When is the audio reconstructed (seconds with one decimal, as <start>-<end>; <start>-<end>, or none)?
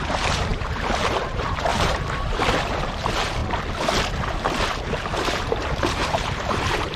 0.0-3.4; 4.1-7.0